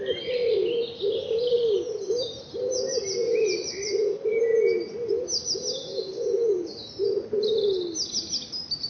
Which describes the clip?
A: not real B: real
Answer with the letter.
B